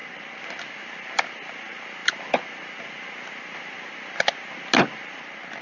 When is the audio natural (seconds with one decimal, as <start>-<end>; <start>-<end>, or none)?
0.0-5.6